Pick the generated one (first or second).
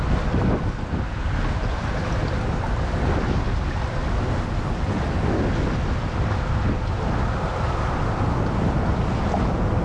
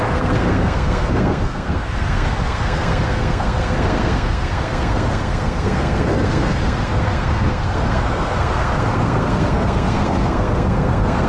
second